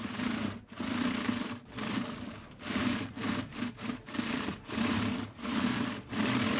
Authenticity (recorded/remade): remade